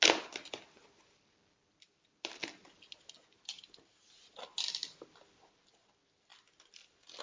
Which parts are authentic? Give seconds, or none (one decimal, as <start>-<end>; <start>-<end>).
0.0-7.2